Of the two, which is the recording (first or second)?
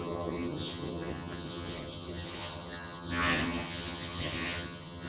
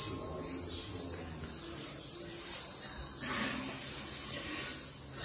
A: second